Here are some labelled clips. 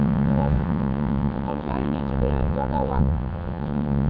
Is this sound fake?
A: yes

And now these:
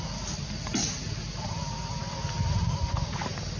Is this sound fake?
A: no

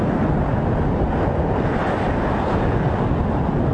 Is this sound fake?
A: no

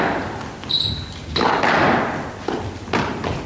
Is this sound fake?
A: no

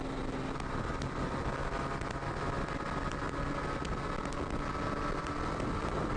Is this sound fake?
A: no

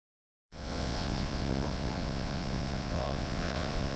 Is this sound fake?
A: yes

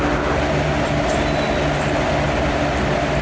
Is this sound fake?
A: no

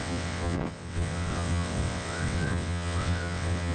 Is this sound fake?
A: yes